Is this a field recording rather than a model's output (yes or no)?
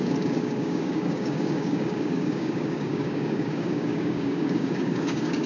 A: no